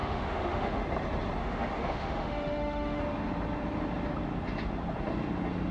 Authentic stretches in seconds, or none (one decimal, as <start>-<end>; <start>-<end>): 0.8-1.4; 3.0-5.7